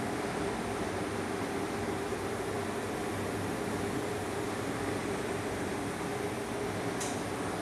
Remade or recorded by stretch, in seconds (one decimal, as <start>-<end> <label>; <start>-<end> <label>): 0.0-5.0 recorded; 5.0-5.7 remade; 5.7-7.6 recorded